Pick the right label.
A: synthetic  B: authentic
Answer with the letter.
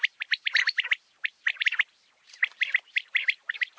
A